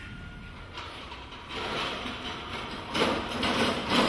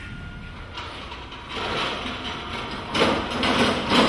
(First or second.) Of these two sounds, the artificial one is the first